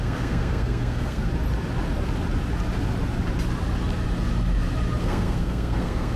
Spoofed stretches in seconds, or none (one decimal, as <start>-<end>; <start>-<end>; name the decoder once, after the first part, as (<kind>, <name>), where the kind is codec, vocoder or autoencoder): 0.0-1.3 (codec, SNAC); 5.0-6.2